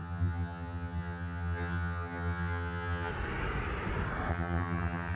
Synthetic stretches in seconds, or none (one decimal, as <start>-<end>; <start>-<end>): 0.0-3.1; 4.3-5.2

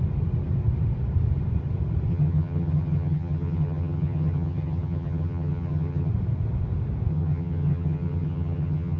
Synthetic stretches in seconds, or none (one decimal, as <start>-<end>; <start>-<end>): 2.1-6.1; 7.1-9.0

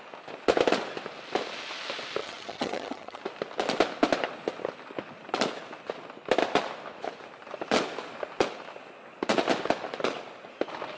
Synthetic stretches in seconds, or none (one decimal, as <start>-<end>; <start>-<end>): 2.2-3.2

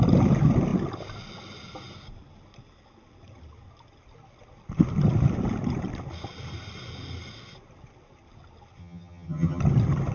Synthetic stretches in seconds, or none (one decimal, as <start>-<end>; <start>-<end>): 8.8-9.6

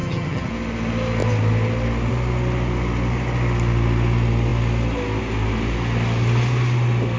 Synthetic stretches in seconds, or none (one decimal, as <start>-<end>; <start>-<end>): 0.0-0.5